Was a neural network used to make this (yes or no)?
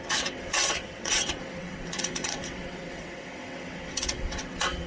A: yes